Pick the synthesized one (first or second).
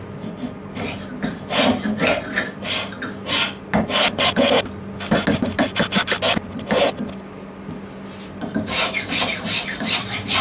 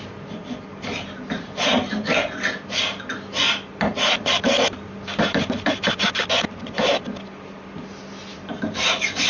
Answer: second